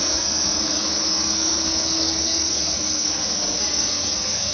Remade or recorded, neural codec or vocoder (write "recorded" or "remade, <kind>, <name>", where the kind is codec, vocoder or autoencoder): remade, codec, SNAC